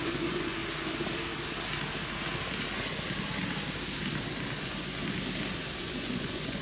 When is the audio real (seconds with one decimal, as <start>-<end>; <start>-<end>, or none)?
0.6-4.6; 5.0-5.8